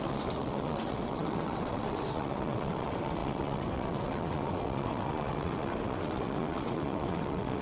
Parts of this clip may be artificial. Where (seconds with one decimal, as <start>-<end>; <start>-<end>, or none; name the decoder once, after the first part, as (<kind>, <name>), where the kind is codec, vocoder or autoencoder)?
0.0-7.6 (vocoder, WaveNeXt)